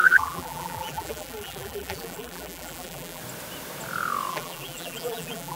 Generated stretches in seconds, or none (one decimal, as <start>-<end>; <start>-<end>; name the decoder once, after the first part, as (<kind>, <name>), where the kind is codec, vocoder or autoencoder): 0.0-3.2 (vocoder, BigVGAN v2); 4.3-5.6